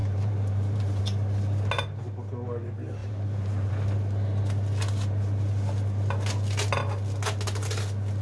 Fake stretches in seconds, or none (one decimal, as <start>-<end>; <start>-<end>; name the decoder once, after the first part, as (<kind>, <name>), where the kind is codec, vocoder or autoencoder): 0.0-1.0 (vocoder, BigVGAN v2); 3.0-3.7